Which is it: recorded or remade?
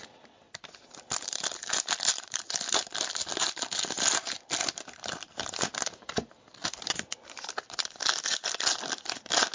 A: recorded